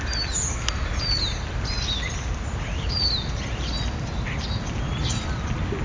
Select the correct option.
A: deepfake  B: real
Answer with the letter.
B